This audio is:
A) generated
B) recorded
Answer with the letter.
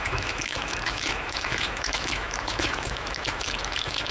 A